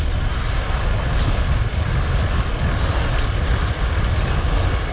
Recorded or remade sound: recorded